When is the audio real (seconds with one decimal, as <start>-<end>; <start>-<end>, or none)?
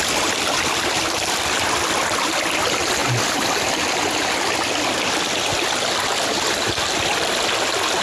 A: 0.0-8.0